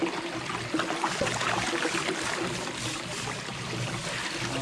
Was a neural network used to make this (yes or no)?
no